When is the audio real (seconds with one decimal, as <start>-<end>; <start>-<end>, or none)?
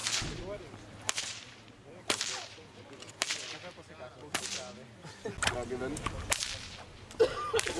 4.2-7.8